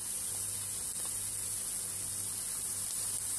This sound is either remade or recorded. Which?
recorded